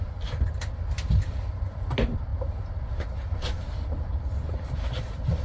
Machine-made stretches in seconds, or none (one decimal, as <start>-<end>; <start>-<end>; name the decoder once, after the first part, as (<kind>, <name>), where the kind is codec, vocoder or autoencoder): none